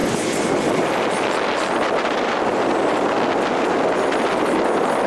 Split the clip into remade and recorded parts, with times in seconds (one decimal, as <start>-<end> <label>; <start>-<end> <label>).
0.0-5.1 recorded